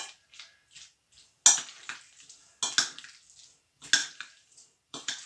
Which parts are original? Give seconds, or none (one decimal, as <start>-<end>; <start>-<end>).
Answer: 0.0-4.0